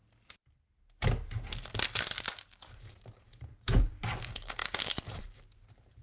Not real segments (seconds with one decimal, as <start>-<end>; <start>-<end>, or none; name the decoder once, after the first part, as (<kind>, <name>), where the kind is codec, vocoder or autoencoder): 2.8-6.0 (vocoder, BigVGAN v2)